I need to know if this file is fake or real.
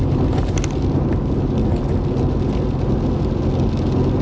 real